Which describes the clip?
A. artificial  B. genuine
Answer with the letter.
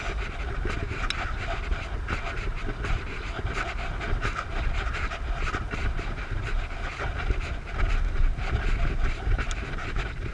B